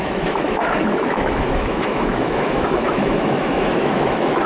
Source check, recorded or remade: remade